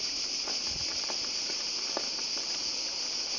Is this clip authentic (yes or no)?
yes